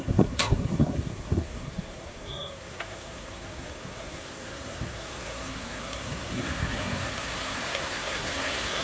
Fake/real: fake